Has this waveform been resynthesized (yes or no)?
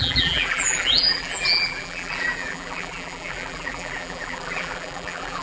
yes